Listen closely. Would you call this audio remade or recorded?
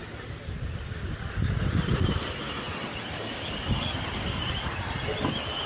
recorded